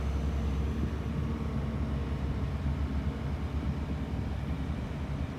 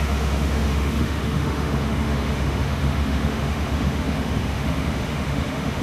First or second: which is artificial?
second